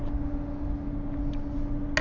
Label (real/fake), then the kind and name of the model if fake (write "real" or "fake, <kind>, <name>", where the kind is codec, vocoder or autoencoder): real